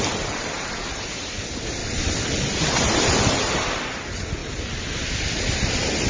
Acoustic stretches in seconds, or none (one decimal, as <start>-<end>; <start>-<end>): 0.0-6.1